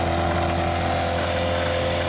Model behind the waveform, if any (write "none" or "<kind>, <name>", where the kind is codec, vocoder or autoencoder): none